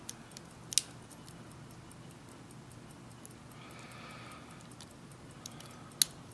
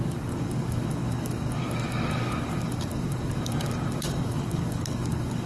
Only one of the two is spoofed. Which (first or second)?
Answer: second